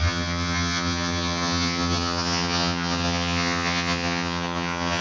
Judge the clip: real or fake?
fake